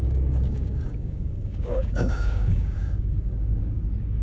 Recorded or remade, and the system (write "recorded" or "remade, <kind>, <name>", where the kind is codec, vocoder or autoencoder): remade, codec, DAC